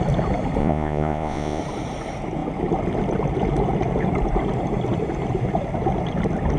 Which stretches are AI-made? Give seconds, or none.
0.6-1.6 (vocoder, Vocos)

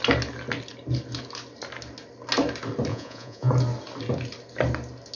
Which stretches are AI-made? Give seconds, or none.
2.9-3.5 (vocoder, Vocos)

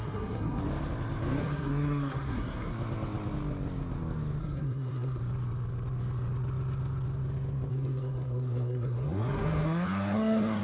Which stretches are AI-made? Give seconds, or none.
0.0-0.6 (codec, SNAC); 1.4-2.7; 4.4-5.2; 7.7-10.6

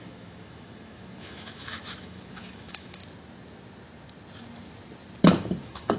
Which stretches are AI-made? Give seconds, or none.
0.0-3.0 (autoencoder, DAC-VAE); 5.6-6.0